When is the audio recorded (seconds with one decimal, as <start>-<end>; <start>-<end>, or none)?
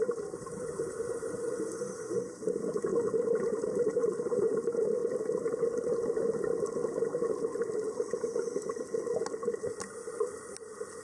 5.0-9.6